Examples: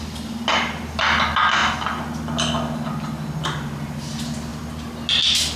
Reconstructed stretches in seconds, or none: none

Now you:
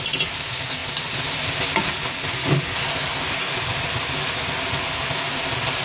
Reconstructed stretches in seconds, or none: none

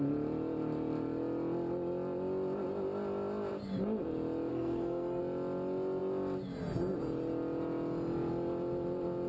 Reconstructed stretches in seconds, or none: 4.5-5.2 (codec, SNAC)

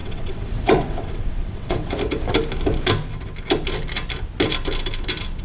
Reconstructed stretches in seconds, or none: 0.0-1.9 (vocoder, WaveNeXt)

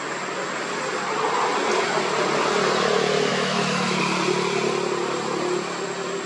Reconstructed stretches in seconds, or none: 3.3-4.0 (autoencoder, DAC-VAE)

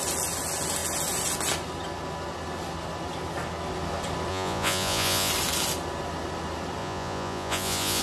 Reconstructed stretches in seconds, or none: 4.3-5.3 (vocoder, Vocos); 6.8-8.0

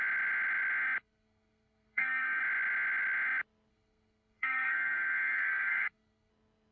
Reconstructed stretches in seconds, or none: 1.0-2.4 (codec, SNAC); 3.7-6.3

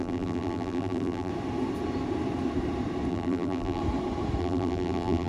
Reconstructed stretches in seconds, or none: 0.0-1.3 (vocoder, BigVGAN v2); 3.1-3.8; 4.4-5.3